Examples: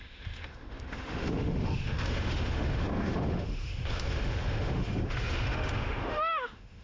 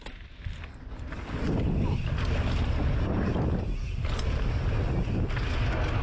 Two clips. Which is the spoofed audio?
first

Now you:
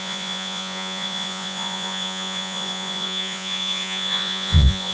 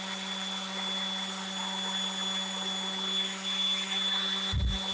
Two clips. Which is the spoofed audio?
first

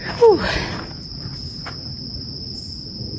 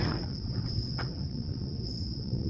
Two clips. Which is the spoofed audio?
second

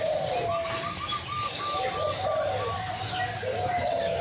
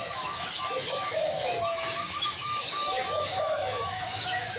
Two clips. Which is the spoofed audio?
second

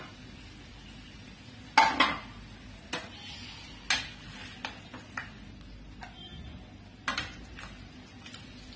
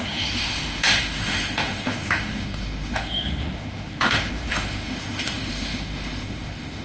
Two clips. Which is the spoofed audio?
second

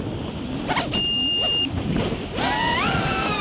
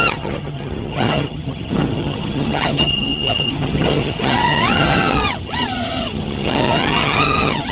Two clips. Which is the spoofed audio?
second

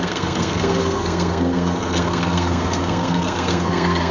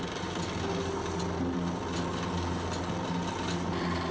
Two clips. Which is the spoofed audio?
first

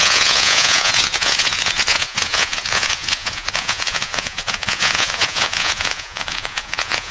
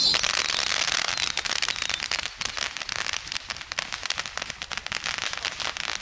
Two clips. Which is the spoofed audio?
first